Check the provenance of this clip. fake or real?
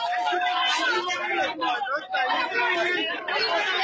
real